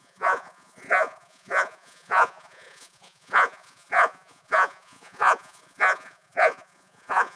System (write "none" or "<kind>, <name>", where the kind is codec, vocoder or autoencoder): vocoder, Vocos